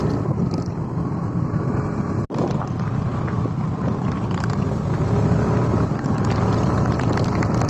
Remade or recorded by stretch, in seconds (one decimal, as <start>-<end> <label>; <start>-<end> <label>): 0.0-7.7 recorded